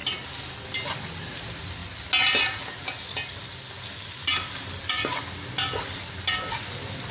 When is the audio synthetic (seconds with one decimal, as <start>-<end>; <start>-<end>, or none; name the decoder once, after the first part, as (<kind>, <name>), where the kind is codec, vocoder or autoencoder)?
none

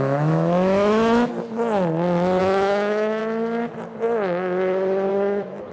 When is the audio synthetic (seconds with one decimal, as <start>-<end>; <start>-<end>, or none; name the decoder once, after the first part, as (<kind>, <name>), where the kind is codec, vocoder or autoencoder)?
0.0-1.3 (autoencoder, DAC-VAE); 2.4-3.2; 5.1-5.7

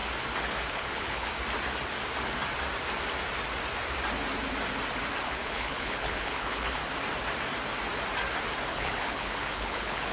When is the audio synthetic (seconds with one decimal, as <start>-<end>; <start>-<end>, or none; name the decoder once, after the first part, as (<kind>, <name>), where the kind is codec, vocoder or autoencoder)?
0.7-1.3 (codec, HILCodec); 5.2-6.8; 8.7-10.1

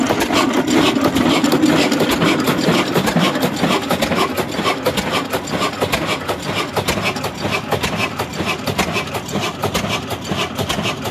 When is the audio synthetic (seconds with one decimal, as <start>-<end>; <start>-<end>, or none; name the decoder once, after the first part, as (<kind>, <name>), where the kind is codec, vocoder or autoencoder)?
none

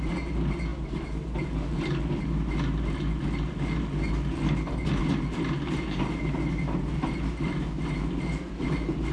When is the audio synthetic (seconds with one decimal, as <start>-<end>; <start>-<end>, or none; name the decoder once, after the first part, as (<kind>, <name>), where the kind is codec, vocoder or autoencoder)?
none

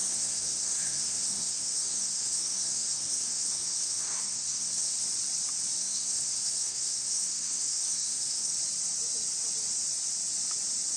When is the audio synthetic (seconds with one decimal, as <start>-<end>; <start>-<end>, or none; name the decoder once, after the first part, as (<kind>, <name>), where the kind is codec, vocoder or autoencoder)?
0.0-5.0 (codec, SNAC); 5.8-8.5

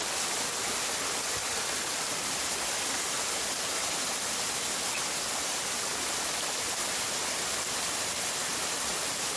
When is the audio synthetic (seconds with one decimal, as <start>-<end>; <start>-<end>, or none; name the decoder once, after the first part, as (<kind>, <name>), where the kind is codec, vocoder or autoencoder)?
none

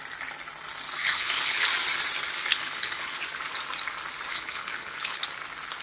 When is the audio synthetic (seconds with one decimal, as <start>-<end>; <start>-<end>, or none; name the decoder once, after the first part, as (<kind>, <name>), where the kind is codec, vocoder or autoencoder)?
1.0-1.7 (codec, HILCodec); 2.5-3.2; 4.3-5.2